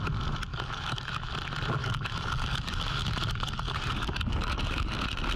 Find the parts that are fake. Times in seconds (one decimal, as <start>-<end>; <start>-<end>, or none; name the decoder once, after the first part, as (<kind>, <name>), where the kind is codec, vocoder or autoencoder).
0.5-1.1 (codec, DAC); 1.8-5.0